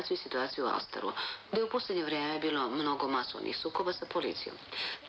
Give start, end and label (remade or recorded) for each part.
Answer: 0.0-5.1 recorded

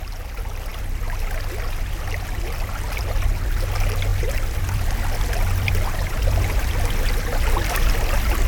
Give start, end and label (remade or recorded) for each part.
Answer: 0.0-4.1 recorded; 4.1-7.2 remade; 7.2-8.5 recorded

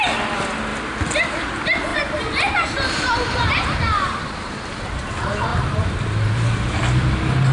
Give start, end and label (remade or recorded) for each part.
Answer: 0.0-1.9 recorded; 1.9-3.5 remade; 3.5-5.5 recorded; 5.5-7.1 remade; 7.1-7.5 recorded

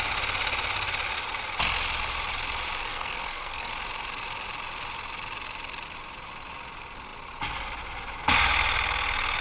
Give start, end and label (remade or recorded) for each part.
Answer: 0.0-2.8 recorded; 2.8-3.7 remade; 3.7-9.4 recorded